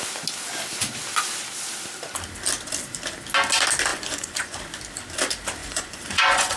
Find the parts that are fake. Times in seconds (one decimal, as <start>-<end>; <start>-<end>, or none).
3.9-4.6; 5.6-6.6